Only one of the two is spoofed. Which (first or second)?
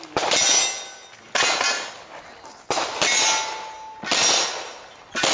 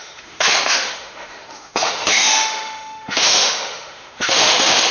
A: second